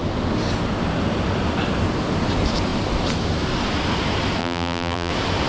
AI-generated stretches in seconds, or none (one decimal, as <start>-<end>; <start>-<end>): 4.4-5.1